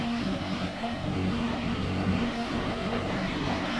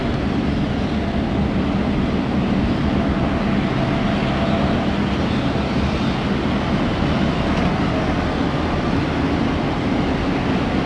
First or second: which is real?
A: second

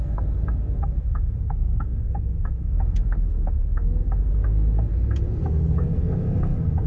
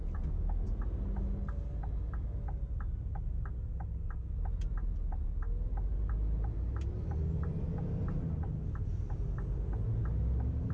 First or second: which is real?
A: second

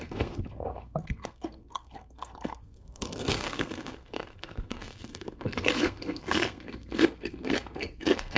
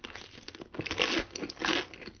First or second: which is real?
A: second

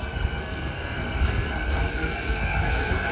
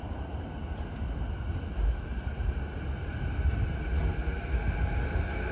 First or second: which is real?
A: second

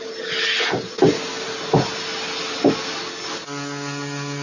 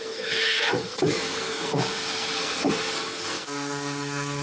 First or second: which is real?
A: first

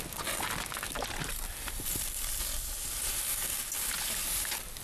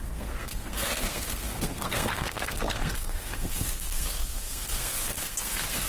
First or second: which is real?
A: first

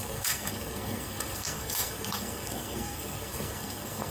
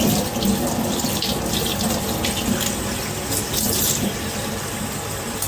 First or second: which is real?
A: second